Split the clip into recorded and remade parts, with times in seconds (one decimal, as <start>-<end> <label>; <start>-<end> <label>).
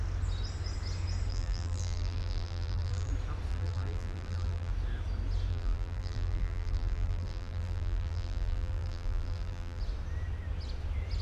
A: 0.0-1.3 recorded; 1.3-3.1 remade; 3.1-3.5 recorded; 3.5-4.7 remade; 4.7-5.5 recorded; 5.5-9.8 remade; 9.8-11.2 recorded